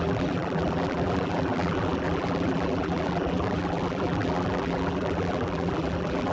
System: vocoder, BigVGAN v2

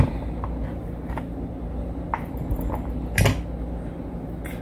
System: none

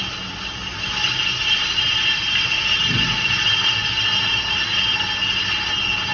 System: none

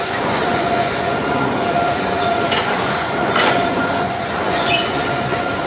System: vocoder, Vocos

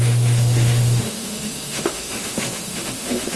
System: autoencoder, DAC-VAE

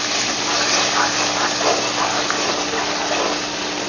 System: none